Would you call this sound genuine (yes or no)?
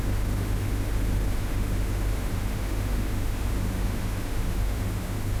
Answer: no